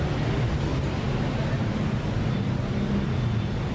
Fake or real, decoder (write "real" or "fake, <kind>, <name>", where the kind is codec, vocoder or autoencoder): real